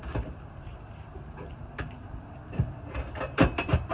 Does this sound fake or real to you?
fake